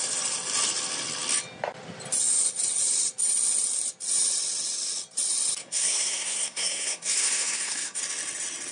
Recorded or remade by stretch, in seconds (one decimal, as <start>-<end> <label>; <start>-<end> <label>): 0.0-5.6 recorded; 5.6-8.0 remade; 8.0-8.7 recorded